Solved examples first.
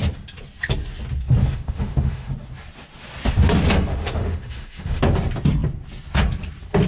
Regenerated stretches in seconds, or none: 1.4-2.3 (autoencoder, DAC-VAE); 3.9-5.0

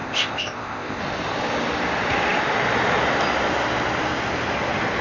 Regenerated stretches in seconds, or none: 0.0-1.0 (codec, ZipCodec)

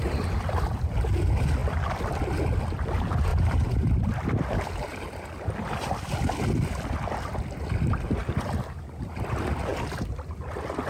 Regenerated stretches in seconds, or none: 3.3-3.8 (vocoder, BigVGAN v2)

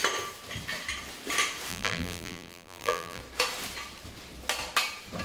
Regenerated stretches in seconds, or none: 1.7-3.2 (vocoder, BigVGAN v2)

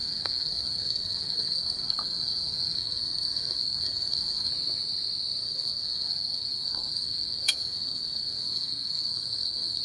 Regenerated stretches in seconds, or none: 0.0-4.5 (codec, SNAC); 5.4-9.8

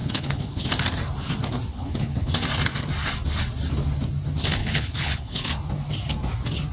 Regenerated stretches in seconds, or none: 0.0-0.7 (codec, HILCodec); 1.7-2.3; 4.6-5.5

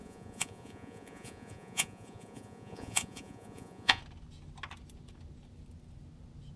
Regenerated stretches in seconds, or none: 0.0-4.0 (vocoder, Vocos)